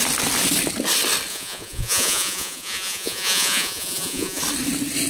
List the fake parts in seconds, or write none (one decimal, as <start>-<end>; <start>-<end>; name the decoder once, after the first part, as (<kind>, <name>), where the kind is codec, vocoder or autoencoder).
1.3-4.4 (vocoder, Vocos)